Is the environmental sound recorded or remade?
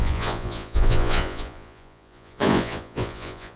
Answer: remade